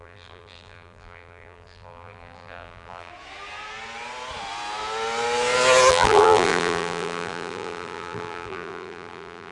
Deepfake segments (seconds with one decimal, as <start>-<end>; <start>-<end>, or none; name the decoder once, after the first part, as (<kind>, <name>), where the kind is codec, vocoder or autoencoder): 0.0-3.1 (vocoder, BigVGAN v2); 5.9-9.5